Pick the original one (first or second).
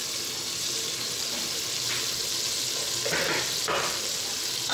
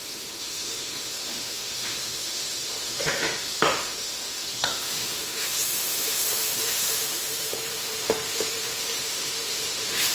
first